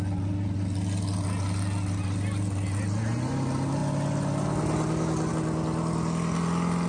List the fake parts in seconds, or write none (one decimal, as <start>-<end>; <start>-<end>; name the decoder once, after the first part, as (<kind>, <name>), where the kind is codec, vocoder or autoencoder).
none